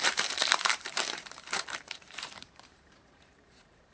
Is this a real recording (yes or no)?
no